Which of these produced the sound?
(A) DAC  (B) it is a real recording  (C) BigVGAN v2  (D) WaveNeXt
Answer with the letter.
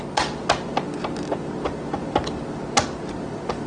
B